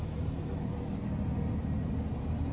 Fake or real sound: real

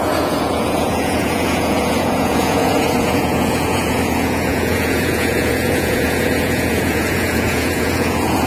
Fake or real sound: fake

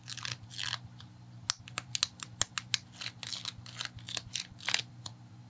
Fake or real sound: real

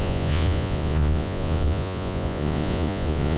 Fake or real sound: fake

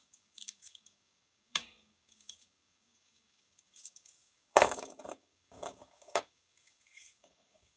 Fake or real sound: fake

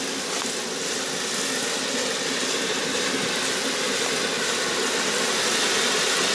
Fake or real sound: real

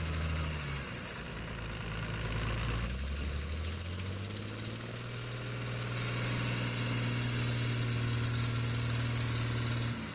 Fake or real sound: real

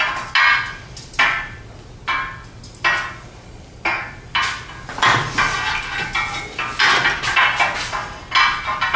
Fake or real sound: real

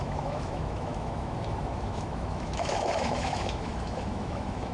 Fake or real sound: fake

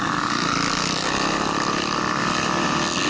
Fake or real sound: real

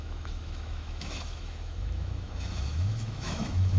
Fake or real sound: fake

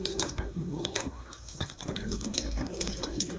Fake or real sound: fake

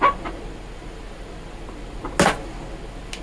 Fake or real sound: real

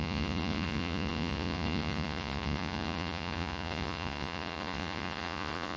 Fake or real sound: fake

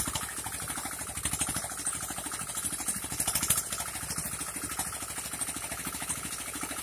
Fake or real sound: real